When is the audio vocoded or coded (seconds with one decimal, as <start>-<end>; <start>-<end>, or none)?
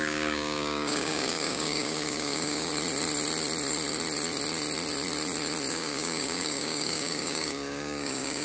0.0-2.7; 5.7-8.4